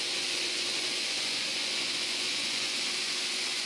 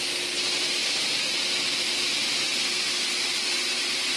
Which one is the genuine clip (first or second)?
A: second